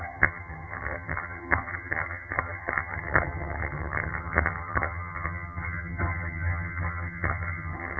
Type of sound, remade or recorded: remade